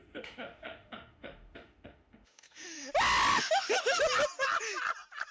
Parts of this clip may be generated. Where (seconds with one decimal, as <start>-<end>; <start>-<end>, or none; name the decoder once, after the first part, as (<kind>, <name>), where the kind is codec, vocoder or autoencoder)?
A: 0.0-2.9 (autoencoder, DAC-VAE); 3.3-4.0